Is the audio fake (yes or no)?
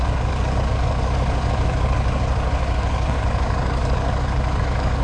yes